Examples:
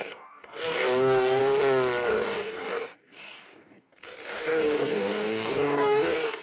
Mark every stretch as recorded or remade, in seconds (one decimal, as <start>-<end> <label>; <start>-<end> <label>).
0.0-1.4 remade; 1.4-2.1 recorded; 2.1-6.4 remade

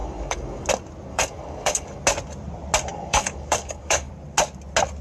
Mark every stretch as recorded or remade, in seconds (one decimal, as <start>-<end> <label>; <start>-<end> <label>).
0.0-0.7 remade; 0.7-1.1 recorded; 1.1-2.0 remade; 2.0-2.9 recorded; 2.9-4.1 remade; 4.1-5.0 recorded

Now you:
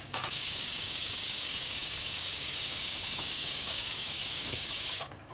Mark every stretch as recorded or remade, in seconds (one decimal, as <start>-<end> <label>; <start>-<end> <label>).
0.0-5.3 remade

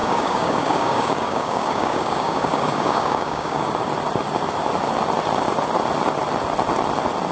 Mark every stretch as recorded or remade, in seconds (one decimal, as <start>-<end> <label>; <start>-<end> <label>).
0.0-3.7 remade; 3.7-7.3 recorded